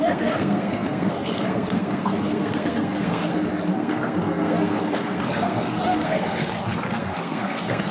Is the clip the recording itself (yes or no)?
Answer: no